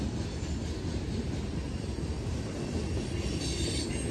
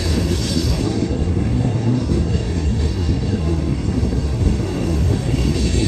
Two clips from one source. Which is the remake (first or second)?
second